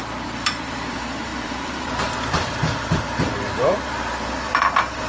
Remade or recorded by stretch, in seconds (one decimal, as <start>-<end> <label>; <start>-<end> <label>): 0.0-5.1 remade